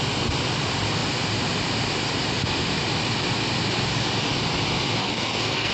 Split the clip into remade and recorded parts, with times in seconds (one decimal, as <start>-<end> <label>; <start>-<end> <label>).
0.0-5.0 recorded; 5.0-5.7 remade